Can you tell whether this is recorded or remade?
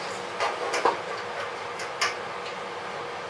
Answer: recorded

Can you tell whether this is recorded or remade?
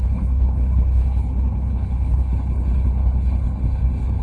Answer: remade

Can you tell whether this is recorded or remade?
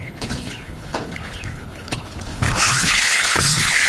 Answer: remade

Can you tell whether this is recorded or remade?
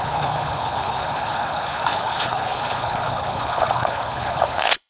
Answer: remade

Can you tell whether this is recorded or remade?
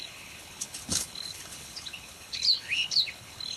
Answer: remade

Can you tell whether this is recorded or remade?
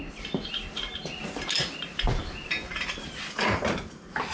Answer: recorded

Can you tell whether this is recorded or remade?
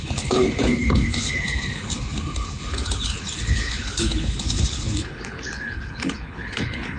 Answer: remade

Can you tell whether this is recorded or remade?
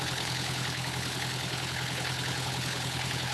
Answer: remade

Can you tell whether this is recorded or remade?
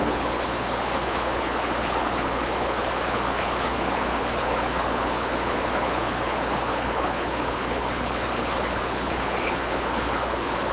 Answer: remade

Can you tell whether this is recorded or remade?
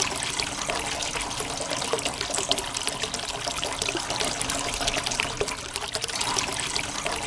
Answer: recorded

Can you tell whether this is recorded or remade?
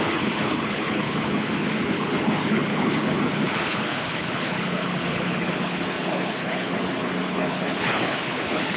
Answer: remade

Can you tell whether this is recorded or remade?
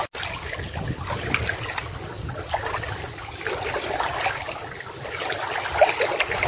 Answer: recorded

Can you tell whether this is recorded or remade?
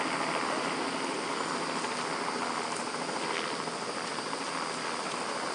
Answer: recorded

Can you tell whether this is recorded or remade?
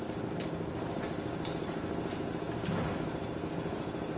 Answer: recorded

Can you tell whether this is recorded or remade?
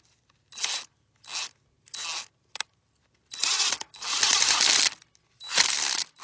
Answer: recorded